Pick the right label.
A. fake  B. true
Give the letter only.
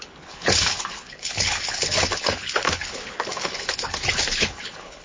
A